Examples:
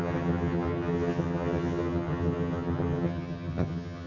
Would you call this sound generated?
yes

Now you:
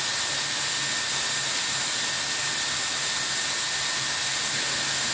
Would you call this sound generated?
no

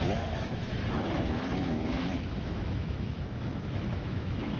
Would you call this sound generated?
yes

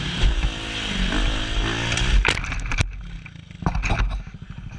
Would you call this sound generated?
no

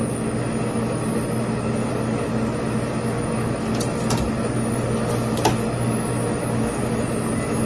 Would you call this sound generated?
no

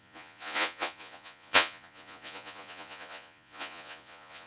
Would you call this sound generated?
yes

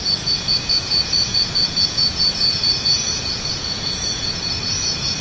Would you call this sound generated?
yes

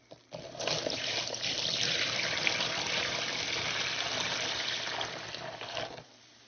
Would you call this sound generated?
yes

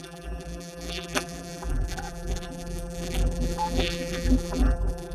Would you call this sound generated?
yes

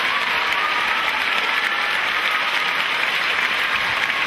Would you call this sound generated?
no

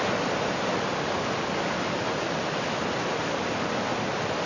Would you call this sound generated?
no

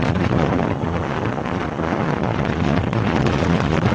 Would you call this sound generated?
yes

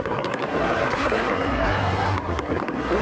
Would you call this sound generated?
yes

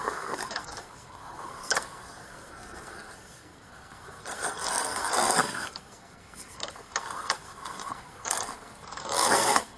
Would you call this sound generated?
yes